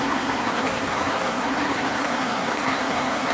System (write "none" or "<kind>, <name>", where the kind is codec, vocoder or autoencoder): codec, SNAC